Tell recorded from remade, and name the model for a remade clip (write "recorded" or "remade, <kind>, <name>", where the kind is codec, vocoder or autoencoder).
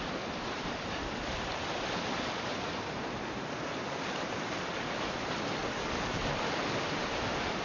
remade, vocoder, BigVGAN v2